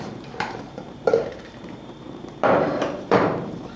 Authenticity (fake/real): fake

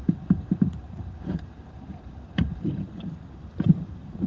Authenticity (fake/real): fake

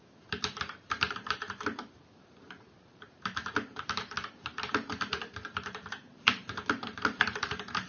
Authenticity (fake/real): fake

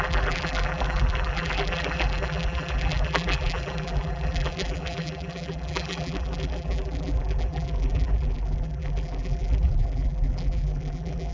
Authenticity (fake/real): fake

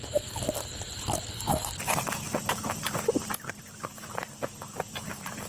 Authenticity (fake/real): fake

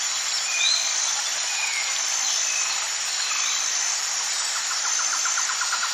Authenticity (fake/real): fake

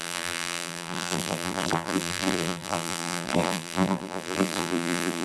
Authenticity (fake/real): fake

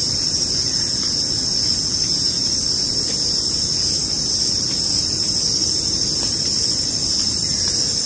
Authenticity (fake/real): real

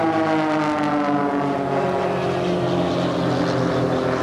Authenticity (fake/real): fake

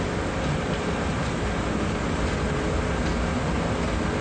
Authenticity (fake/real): real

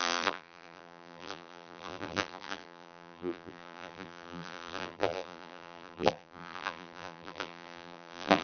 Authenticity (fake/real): fake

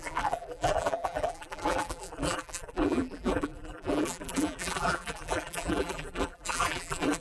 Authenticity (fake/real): fake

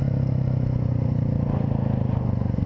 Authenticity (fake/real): real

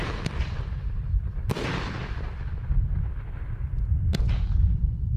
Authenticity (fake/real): real